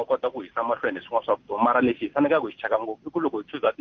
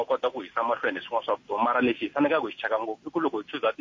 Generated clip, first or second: first